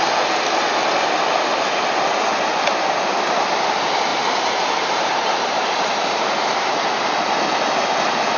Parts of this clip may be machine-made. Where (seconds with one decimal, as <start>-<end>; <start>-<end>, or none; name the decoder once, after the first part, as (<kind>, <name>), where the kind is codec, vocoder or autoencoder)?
4.1-7.1 (vocoder, BigVGAN v2)